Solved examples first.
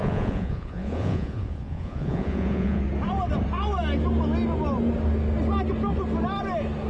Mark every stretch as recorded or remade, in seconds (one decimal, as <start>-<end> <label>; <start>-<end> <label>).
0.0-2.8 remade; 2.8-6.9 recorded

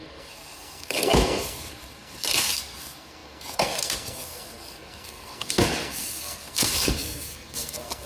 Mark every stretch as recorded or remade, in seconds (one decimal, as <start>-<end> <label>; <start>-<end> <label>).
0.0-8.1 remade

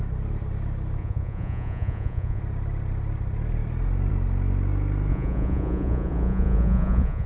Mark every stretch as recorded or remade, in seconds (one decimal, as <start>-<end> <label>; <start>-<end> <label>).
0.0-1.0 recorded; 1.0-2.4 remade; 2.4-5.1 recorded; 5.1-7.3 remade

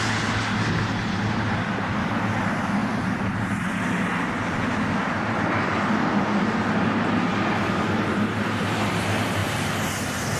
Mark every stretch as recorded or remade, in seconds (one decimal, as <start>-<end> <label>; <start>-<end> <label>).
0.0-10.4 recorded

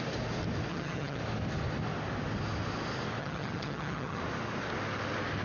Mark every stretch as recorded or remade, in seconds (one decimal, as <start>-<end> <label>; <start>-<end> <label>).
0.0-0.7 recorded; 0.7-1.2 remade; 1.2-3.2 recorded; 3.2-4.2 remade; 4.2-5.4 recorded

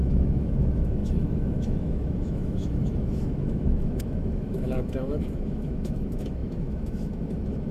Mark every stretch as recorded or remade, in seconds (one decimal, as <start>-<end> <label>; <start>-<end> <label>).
0.0-7.7 remade